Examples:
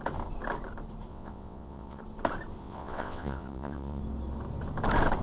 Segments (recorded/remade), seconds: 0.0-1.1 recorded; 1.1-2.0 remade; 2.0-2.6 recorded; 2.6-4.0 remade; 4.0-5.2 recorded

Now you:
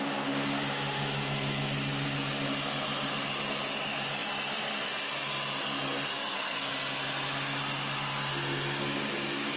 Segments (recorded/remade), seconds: 0.0-6.1 recorded; 6.1-6.7 remade; 6.7-9.6 recorded

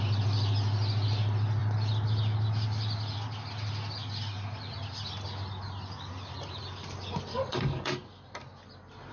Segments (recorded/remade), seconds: 0.0-7.3 recorded; 7.3-7.9 remade; 7.9-9.1 recorded

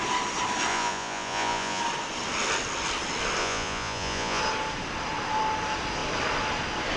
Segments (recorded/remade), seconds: 0.0-0.7 recorded; 0.7-1.8 remade; 1.8-3.4 recorded; 3.4-4.4 remade; 4.4-7.0 recorded